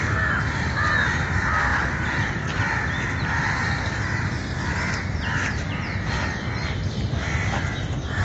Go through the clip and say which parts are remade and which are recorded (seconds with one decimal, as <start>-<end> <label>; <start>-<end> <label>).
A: 0.0-1.7 recorded; 1.7-2.6 remade; 2.6-8.2 recorded